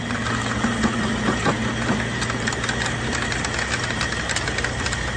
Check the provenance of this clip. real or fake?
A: real